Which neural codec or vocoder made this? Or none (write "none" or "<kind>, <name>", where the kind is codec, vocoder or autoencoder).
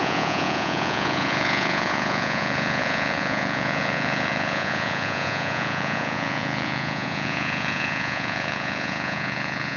vocoder, Vocos